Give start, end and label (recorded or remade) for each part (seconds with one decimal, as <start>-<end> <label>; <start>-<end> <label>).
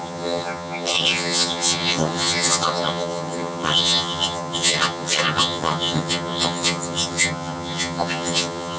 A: 0.0-8.8 remade